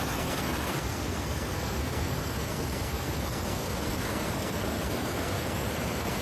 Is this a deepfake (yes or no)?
yes